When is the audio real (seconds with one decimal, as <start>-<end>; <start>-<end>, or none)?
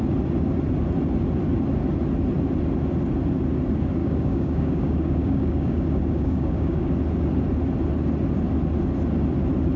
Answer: 0.0-4.0; 6.9-9.8